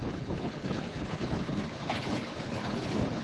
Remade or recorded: remade